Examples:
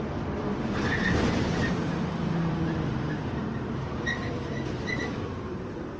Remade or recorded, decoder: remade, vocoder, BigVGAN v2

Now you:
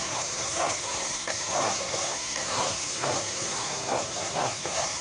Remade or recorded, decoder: remade, codec, SNAC